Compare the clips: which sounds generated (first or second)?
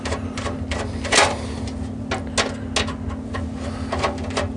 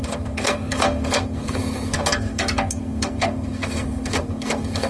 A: second